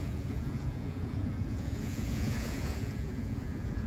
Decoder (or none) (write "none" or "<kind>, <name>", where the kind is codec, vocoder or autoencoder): vocoder, Vocos